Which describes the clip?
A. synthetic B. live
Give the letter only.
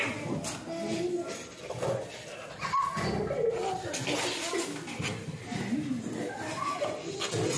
B